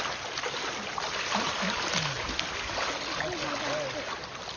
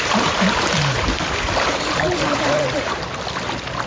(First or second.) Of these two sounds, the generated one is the second